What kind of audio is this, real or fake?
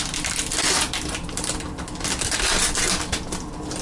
real